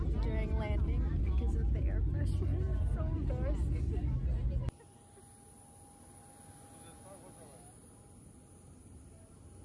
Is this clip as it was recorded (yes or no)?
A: yes